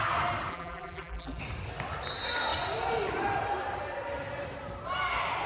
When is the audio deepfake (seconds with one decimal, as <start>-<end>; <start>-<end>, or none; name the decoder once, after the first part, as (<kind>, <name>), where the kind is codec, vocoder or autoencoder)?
0.5-1.4 (vocoder, BigVGAN v2)